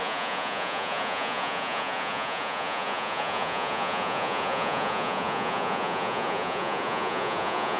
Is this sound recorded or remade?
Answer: remade